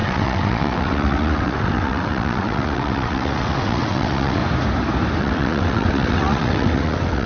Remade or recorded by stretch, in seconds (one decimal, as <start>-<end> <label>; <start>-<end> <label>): 0.0-4.4 remade; 4.4-5.2 recorded; 5.2-7.3 remade